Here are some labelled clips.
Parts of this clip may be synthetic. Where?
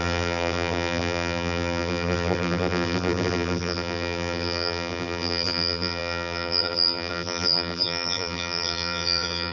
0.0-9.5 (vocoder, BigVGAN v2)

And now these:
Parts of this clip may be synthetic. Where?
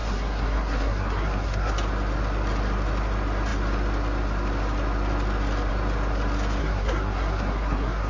0.0-1.7 (codec, SNAC); 6.6-8.1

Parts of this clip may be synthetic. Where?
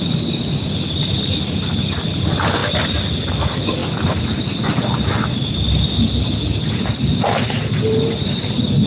none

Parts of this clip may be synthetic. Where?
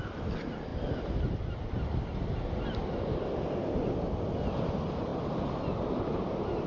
none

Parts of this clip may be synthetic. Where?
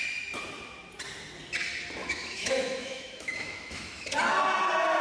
2.0-4.1 (autoencoder, DAC-VAE)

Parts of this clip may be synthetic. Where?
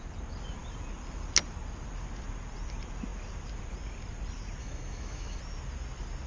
4.6-5.4 (autoencoder, DAC-VAE)